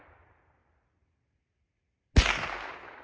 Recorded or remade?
recorded